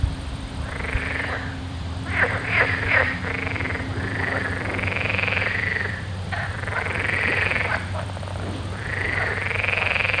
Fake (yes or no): yes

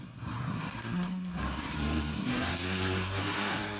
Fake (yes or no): yes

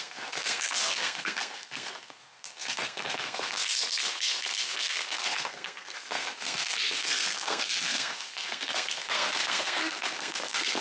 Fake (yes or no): yes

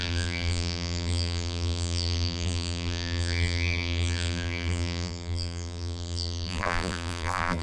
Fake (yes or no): yes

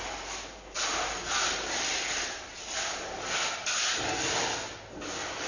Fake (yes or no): no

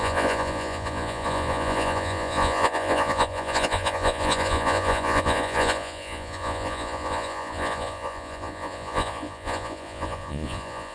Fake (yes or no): yes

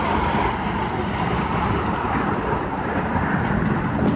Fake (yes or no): yes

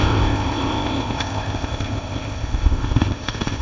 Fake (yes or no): yes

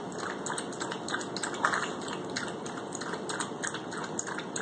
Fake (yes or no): no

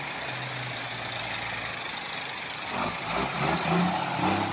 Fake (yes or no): no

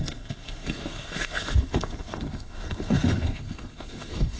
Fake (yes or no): yes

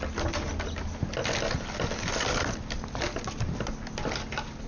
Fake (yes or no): no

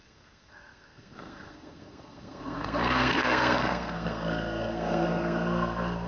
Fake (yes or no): yes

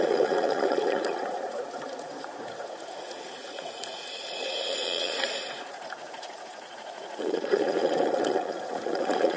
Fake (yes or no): yes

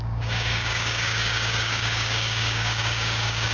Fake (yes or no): yes